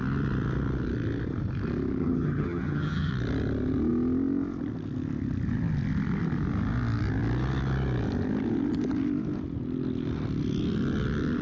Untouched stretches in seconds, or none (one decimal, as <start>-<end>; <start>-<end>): 0.0-2.0; 3.1-11.4